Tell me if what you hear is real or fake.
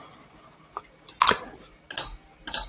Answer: real